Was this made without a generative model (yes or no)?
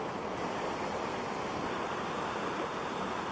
yes